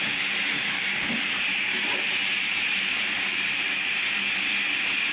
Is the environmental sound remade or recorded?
remade